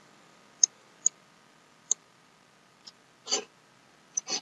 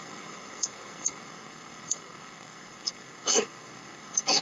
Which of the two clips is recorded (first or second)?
first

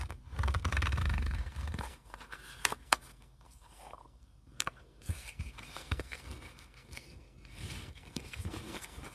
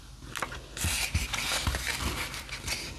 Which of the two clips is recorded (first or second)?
second